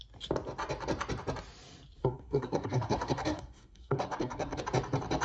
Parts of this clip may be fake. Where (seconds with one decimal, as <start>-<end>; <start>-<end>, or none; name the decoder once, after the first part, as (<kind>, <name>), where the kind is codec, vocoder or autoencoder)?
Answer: 2.0-4.6 (codec, SNAC)